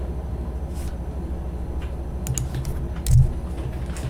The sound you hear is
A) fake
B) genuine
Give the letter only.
B